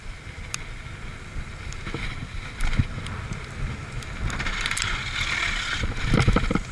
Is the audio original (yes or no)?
yes